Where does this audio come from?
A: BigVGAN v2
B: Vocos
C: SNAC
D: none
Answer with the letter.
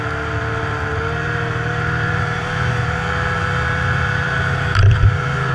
A